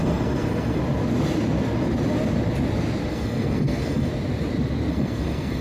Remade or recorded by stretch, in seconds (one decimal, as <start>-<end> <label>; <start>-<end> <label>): 0.0-0.8 remade; 0.8-3.1 recorded; 3.1-4.1 remade; 4.1-4.9 recorded; 4.9-5.6 remade